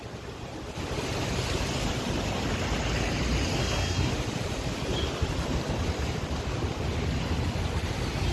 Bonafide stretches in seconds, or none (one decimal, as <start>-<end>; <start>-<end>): 0.0-3.6; 4.1-8.3